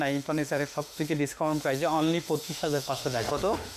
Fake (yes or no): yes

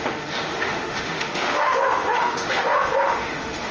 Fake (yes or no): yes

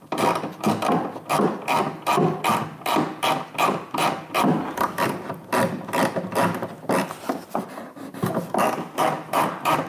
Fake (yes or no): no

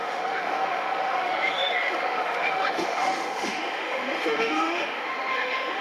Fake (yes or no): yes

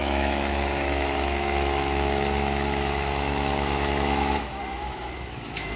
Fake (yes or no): yes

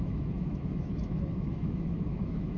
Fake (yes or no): yes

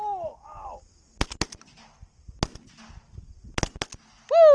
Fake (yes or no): no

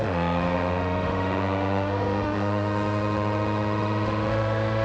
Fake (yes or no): yes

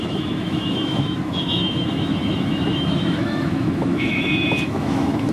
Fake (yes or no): yes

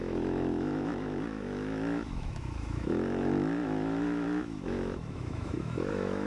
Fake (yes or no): yes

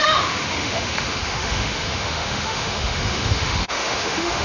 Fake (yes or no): yes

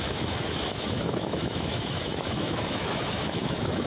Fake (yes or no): yes